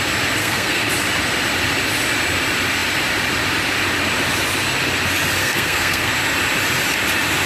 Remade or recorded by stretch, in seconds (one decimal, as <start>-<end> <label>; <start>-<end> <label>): 0.0-0.4 recorded; 0.4-0.9 remade; 0.9-5.4 recorded; 5.4-6.1 remade; 6.1-7.5 recorded